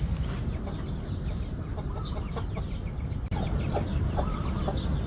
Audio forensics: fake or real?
real